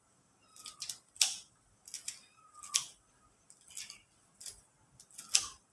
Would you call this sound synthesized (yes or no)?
no